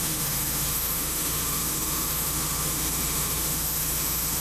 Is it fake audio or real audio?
fake